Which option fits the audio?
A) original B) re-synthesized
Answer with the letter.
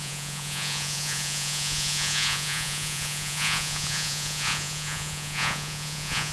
B